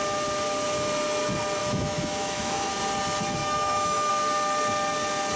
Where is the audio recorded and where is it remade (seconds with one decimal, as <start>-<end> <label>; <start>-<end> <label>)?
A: 0.0-1.6 recorded; 1.6-2.7 remade; 2.7-3.4 recorded; 3.4-4.1 remade; 4.1-5.4 recorded